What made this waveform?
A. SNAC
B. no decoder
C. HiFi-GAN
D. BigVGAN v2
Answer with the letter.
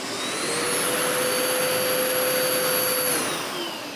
B